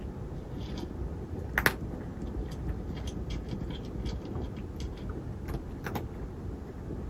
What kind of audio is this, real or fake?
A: real